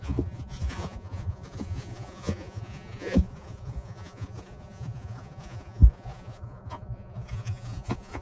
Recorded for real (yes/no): no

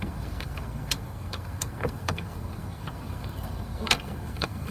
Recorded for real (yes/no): no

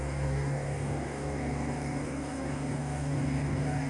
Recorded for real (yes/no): no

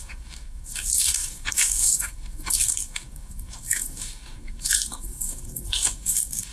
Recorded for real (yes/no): no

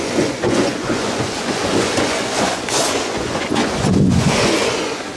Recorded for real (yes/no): no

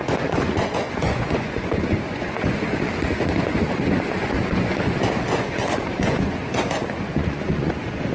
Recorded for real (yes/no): no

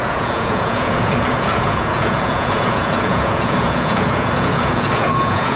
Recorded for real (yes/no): no